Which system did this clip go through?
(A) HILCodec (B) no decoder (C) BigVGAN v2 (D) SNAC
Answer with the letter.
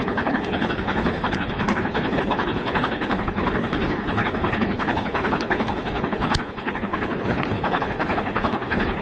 A